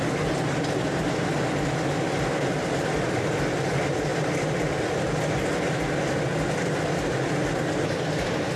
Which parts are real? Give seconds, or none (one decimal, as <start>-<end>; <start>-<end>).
0.0-8.6